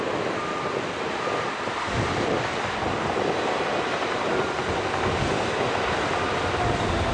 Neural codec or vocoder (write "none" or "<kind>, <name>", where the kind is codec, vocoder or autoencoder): vocoder, BigVGAN v2